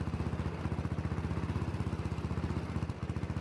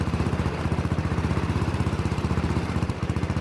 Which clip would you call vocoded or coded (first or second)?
second